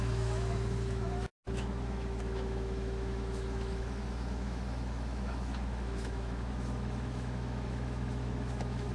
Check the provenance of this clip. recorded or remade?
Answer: remade